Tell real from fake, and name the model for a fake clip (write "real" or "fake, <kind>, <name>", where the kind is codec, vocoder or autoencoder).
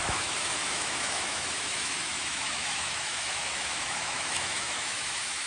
fake, autoencoder, DAC-VAE